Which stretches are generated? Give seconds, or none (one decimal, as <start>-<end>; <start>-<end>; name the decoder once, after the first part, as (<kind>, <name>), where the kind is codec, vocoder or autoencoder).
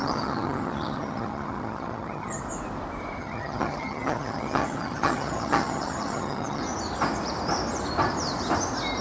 0.0-2.4 (vocoder, HiFi-GAN); 3.2-6.6